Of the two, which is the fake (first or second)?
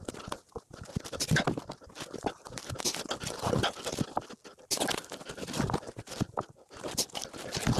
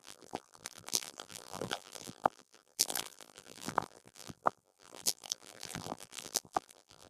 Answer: second